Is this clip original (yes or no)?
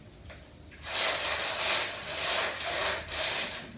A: yes